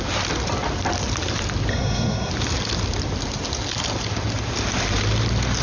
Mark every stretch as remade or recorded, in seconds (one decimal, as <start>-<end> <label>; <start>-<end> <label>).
0.0-1.7 recorded; 1.7-2.3 remade; 2.3-5.6 recorded